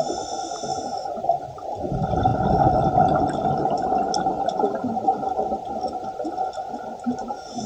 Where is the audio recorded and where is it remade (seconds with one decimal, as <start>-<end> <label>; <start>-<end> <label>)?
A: 0.0-0.7 recorded; 0.7-1.4 remade; 1.4-7.7 recorded